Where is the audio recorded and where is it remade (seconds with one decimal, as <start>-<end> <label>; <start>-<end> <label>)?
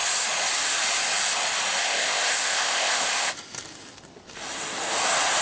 0.0-1.8 recorded; 1.8-3.3 remade; 3.3-5.4 recorded